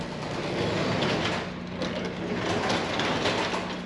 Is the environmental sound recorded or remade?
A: recorded